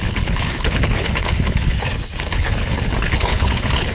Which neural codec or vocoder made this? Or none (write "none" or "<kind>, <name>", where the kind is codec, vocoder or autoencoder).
codec, HILCodec